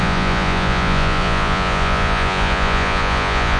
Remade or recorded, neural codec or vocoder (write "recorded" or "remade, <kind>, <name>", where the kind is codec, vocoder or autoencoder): remade, vocoder, Vocos